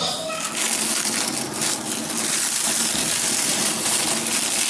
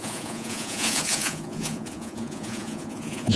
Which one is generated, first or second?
second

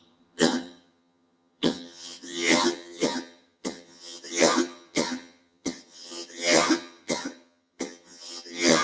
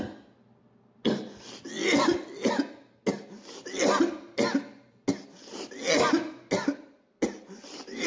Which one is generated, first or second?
first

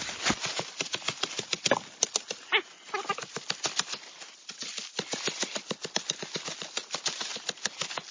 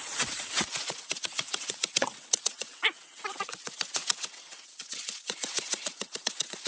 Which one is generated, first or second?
second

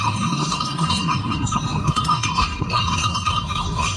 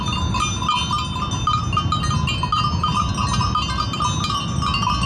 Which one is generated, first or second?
first